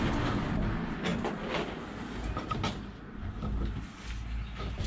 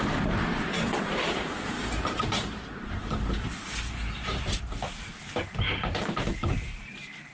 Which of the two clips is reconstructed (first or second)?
second